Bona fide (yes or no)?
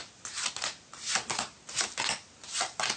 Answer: yes